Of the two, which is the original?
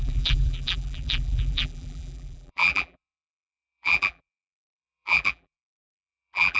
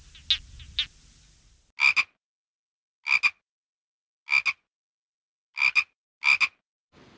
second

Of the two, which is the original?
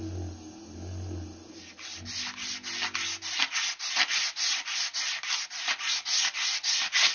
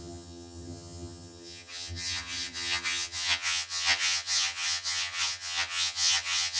first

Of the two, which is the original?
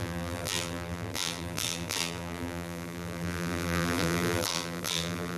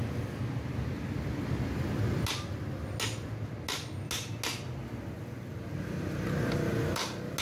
second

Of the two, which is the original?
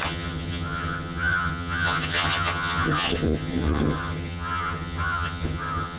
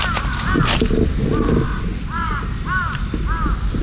second